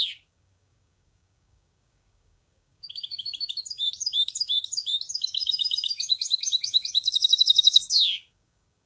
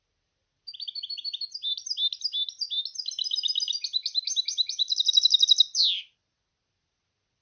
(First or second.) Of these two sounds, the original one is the second